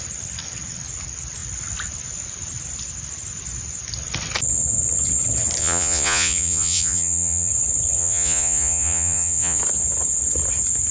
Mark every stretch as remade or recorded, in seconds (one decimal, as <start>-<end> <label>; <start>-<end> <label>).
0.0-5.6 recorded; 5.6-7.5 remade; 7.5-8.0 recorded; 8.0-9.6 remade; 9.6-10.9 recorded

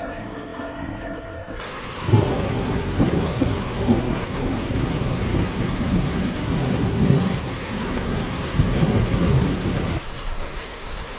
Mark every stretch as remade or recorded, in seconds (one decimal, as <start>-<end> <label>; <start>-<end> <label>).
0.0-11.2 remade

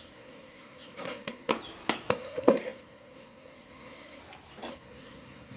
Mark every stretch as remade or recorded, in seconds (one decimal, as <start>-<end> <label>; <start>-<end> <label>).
0.0-1.5 remade; 1.5-2.1 recorded; 2.1-4.2 remade; 4.2-4.7 recorded; 4.7-5.6 remade

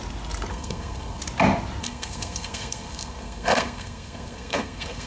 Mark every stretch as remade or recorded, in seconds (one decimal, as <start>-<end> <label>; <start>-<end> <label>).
0.0-0.5 recorded; 0.5-1.2 remade; 1.2-1.8 recorded; 1.8-5.1 remade